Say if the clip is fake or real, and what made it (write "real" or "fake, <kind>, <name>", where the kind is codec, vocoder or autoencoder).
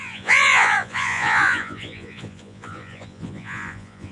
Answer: fake, vocoder, Vocos